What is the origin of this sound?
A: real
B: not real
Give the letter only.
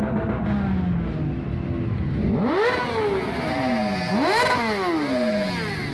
A